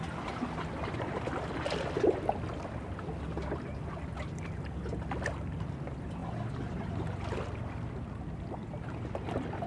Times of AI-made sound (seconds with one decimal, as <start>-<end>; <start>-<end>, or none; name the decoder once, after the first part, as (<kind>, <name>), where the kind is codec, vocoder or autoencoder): none